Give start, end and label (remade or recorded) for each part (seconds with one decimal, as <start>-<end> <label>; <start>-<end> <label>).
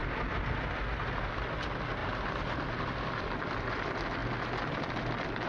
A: 0.0-2.0 recorded; 2.0-2.6 remade; 2.6-5.5 recorded